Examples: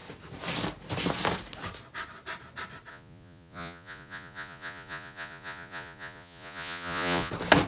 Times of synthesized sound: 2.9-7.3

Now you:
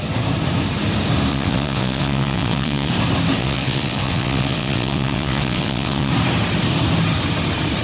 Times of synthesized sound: 1.3-2.9; 3.4-6.1

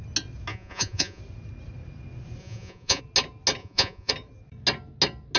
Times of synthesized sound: 0.5-1.2; 2.4-3.0; 3.6-4.1

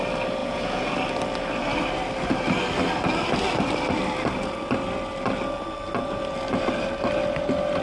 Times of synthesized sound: 0.4-0.9

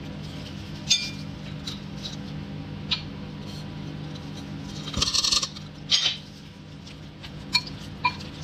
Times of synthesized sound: 7.2-7.9